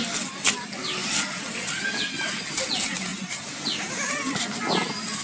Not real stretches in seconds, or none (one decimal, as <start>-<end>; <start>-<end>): none

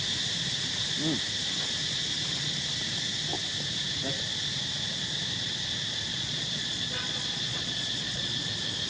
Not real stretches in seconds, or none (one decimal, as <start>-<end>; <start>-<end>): 6.1-8.4